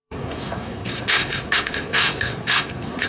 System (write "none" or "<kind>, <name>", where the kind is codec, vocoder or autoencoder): codec, SNAC